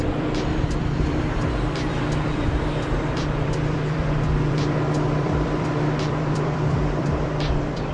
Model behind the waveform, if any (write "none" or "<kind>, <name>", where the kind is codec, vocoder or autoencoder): vocoder, BigVGAN v2